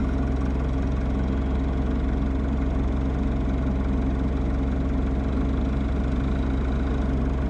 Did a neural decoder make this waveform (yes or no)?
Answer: no